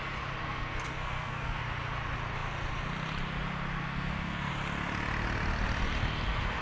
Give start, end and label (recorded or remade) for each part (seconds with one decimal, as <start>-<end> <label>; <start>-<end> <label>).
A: 0.0-0.4 recorded; 0.4-1.6 remade; 1.6-3.8 recorded; 3.8-4.5 remade; 4.5-6.6 recorded